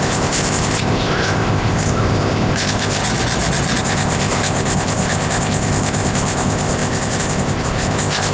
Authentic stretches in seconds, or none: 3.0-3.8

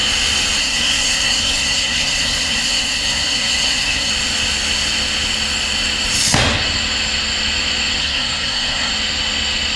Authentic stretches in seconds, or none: 0.0-0.6; 4.1-8.0; 8.9-9.8

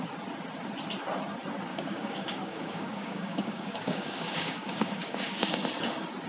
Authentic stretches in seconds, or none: 0.0-1.7; 5.5-6.3

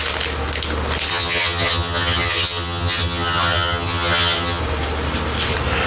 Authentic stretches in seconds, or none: 0.0-1.1; 4.6-5.9

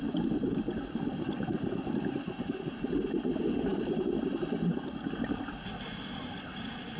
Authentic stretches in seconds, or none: 0.0-7.0